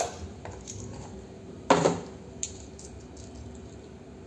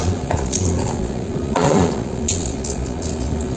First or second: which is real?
first